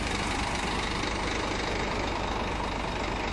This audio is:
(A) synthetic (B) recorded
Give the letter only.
B